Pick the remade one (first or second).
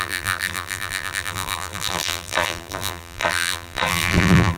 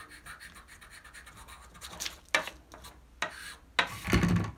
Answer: first